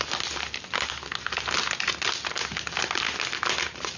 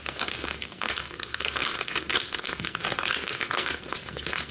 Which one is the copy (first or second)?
second